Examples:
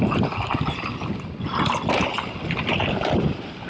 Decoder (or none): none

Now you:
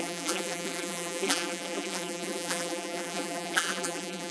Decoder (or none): vocoder, BigVGAN v2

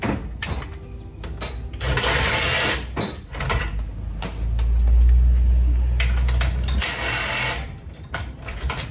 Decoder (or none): none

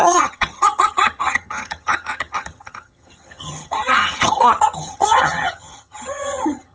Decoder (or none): vocoder, HiFi-GAN